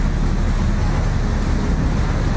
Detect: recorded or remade recorded